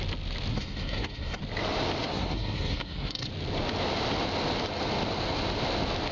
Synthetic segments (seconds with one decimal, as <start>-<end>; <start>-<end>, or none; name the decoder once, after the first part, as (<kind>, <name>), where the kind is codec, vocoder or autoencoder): 0.5-1.4 (codec, SNAC); 2.0-3.3